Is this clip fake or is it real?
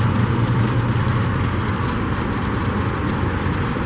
real